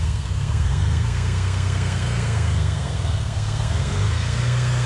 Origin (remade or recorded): remade